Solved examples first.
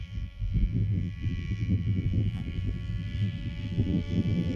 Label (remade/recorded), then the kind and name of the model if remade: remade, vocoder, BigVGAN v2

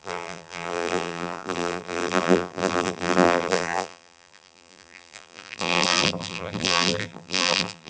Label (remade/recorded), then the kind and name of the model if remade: remade, vocoder, BigVGAN v2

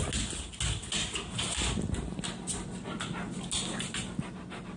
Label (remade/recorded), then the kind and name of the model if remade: recorded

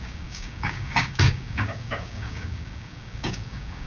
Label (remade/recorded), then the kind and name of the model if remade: remade, codec, DAC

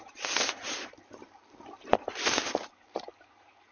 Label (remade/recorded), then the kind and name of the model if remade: remade, vocoder, BigVGAN v2